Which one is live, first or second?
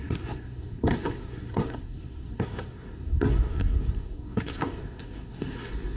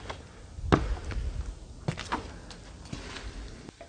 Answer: second